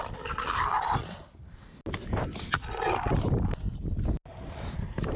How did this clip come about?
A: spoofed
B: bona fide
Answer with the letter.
B